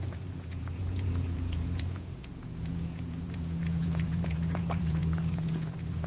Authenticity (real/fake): fake